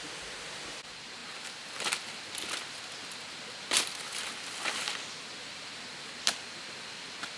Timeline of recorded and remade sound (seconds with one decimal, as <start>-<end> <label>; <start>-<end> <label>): 0.0-7.4 recorded